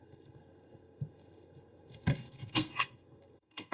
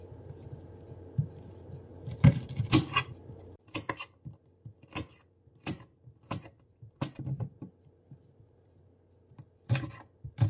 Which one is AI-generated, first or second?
first